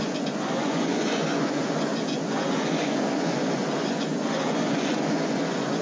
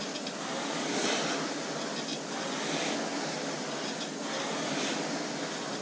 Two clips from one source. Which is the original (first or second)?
second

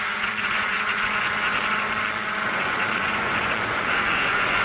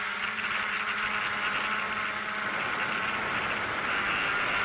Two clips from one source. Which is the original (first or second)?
second